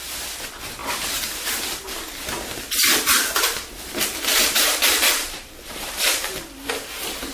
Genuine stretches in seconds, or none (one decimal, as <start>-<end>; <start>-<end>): 0.0-4.3; 6.7-7.3